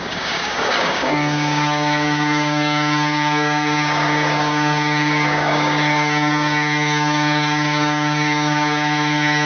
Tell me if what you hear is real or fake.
fake